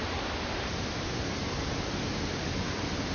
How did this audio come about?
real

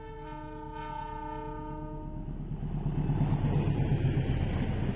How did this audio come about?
real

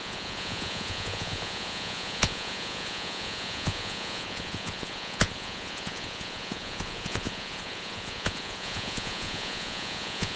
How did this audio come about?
fake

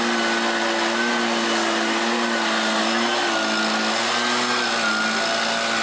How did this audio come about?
real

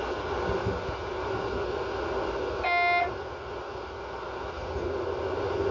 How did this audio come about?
real